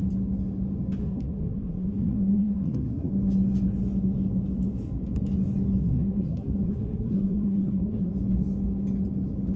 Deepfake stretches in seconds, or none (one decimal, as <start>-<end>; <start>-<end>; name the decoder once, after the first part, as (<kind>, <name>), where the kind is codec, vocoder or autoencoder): 1.0-3.1 (codec, SNAC); 5.8-8.1